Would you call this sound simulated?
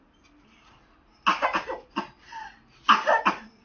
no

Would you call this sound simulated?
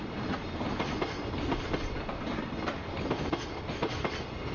no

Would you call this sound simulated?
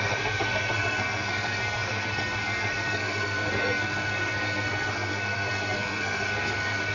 yes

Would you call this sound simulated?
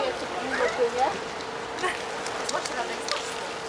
no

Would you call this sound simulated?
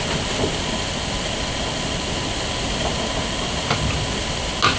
no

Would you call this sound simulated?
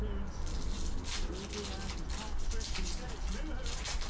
no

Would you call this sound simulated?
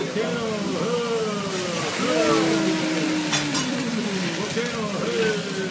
no